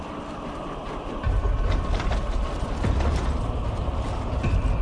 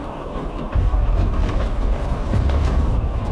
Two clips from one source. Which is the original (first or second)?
first